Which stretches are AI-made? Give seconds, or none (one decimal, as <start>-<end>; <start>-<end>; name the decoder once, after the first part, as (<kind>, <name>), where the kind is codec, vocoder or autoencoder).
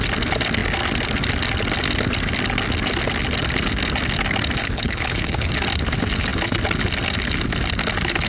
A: 4.6-5.5 (codec, HILCodec)